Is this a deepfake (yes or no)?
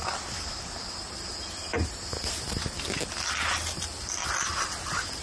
no